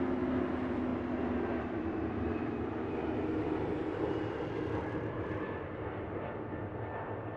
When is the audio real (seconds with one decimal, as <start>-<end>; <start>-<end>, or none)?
0.0-7.4